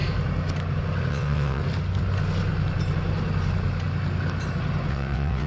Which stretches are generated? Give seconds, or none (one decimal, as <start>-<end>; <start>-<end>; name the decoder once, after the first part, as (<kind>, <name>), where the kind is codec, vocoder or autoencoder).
1.1-1.6 (vocoder, WaveNeXt); 4.9-5.5